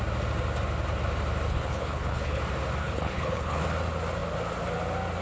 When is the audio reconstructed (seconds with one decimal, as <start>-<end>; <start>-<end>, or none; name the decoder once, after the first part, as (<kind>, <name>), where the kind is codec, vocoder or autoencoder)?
1.5-2.4 (codec, HILCodec); 2.8-3.6